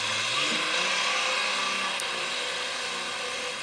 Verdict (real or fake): real